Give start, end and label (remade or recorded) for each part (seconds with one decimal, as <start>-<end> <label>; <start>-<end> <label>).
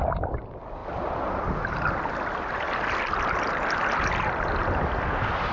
0.0-5.5 recorded